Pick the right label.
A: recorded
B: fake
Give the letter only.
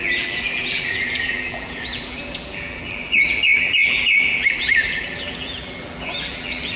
B